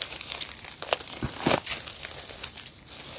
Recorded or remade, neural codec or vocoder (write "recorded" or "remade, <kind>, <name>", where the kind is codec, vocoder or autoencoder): recorded